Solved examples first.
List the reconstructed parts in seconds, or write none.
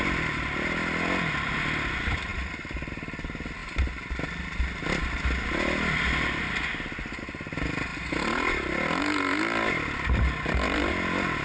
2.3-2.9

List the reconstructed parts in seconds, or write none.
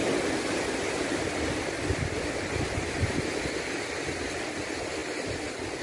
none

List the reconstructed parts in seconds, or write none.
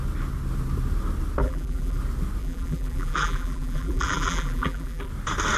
1.4-2.0; 2.4-5.1